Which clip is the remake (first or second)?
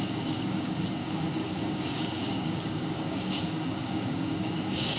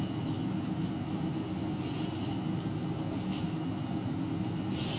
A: first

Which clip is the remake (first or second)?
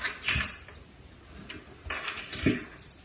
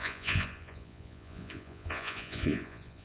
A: second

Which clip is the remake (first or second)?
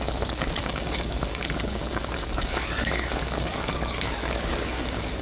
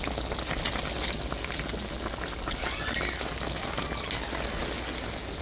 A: first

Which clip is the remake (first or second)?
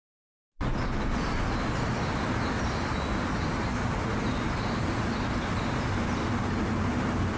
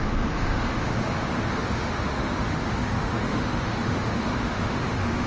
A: second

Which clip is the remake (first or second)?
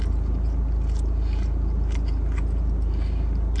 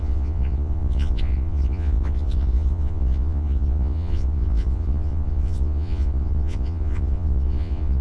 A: second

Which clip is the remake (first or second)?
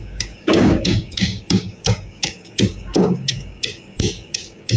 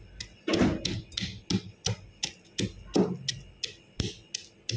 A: first